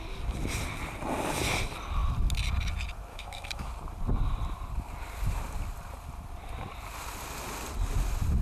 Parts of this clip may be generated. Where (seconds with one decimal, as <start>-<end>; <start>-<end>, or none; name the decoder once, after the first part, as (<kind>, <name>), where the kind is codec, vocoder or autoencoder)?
3.1-3.7 (autoencoder, DAC-VAE)